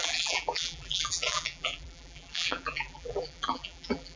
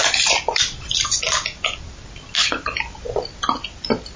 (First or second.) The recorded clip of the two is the second